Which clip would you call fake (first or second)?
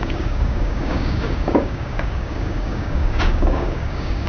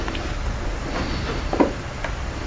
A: first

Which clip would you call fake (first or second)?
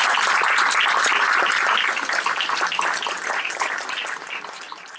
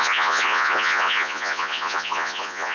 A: second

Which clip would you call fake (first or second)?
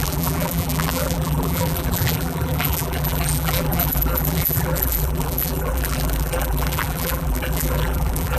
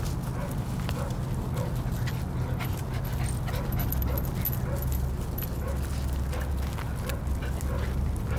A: first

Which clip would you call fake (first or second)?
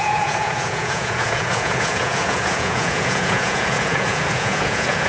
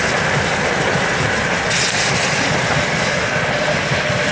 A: first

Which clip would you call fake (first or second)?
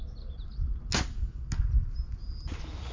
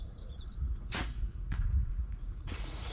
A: second